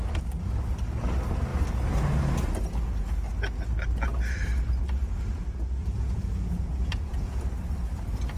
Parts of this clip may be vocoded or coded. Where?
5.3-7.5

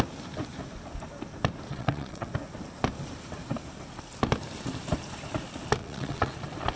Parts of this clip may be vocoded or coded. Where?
1.7-2.3; 5.8-6.3

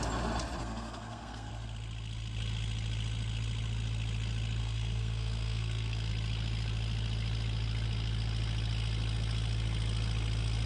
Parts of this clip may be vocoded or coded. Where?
0.6-1.5; 4.6-6.1

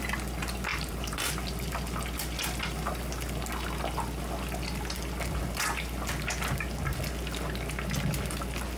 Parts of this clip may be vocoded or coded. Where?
0.7-1.3